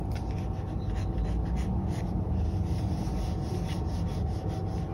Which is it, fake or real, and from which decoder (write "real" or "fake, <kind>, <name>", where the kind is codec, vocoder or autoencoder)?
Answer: real